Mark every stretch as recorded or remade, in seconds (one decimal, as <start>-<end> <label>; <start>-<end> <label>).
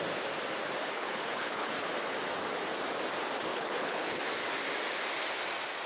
0.0-0.8 recorded; 0.8-1.9 remade; 1.9-3.5 recorded; 3.5-4.2 remade; 4.2-5.9 recorded